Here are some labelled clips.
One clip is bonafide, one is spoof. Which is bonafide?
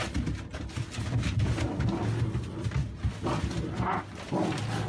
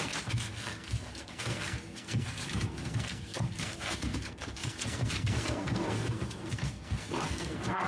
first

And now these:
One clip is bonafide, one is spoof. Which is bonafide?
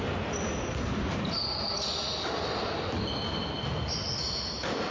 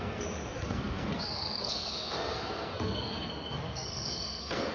first